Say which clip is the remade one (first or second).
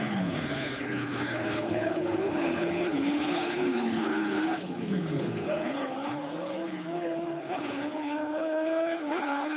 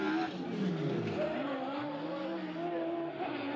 first